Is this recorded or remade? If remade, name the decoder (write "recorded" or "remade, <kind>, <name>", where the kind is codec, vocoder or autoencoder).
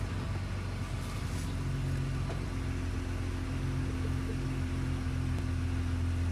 recorded